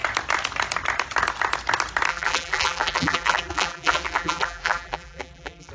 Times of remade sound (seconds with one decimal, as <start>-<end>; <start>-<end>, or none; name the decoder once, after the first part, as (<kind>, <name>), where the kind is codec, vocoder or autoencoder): 2.1-5.7 (vocoder, BigVGAN v2)